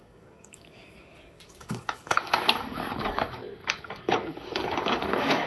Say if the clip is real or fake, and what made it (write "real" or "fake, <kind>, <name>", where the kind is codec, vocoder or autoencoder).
fake, codec, DAC